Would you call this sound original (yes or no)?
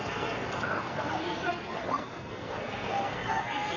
no